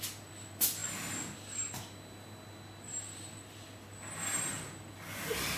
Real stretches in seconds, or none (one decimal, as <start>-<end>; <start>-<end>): 0.0-5.6